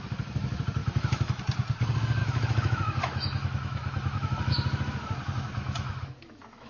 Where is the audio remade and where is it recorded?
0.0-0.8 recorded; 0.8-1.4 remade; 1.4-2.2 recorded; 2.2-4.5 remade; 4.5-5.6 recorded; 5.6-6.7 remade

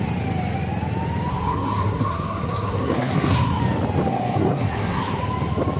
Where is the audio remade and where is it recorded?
0.0-1.3 recorded; 1.3-3.6 remade; 3.6-4.1 recorded; 4.1-5.2 remade; 5.2-5.8 recorded

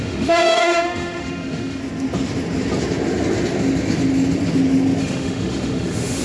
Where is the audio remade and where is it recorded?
0.0-1.8 remade; 1.8-5.0 recorded; 5.0-6.2 remade

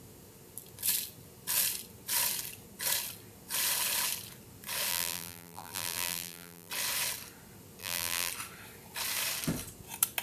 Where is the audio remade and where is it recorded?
0.0-4.9 recorded; 4.9-6.7 remade; 6.7-7.8 recorded; 7.8-8.3 remade; 8.3-10.2 recorded

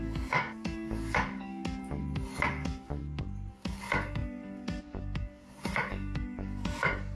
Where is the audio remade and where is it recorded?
0.0-2.0 remade; 2.0-2.5 recorded; 2.5-3.0 remade; 3.0-3.5 recorded; 3.5-7.2 remade